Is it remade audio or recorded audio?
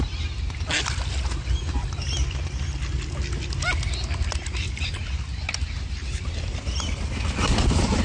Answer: recorded